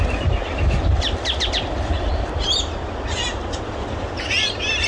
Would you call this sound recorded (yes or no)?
no